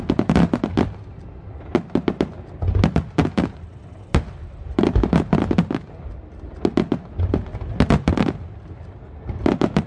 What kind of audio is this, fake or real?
real